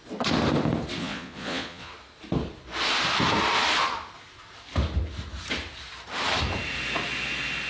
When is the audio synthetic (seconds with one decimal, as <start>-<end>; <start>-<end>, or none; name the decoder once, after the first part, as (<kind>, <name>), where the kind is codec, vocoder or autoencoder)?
1.0-1.9 (vocoder, Vocos)